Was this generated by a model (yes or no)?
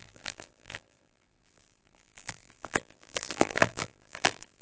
yes